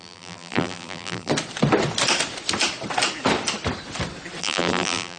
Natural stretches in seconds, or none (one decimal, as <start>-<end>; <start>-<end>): 1.3-4.4